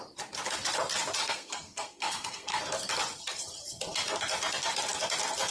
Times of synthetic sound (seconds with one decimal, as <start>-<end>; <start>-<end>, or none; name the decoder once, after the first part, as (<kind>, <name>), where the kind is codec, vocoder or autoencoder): 1.2-2.6 (codec, SNAC)